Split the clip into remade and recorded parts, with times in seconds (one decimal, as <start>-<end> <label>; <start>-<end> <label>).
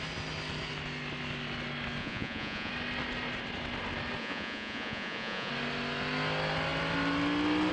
0.0-2.0 recorded; 2.0-2.7 remade; 2.7-4.2 recorded; 4.2-5.5 remade; 5.5-7.7 recorded